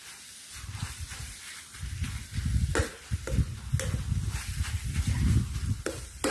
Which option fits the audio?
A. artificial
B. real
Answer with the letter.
B